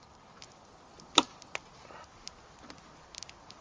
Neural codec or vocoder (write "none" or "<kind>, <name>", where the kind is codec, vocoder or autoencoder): none